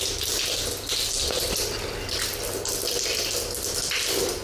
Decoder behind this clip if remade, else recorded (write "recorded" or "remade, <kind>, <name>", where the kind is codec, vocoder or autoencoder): recorded